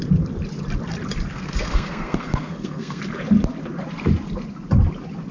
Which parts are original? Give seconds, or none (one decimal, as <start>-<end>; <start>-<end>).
0.0-1.3; 3.0-5.3